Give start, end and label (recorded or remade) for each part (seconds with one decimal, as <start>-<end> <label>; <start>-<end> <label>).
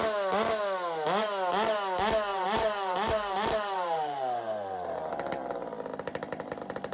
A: 0.0-2.3 recorded; 2.3-5.1 remade; 5.1-6.9 recorded